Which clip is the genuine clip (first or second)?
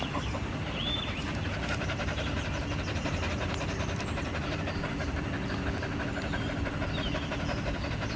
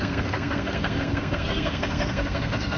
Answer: first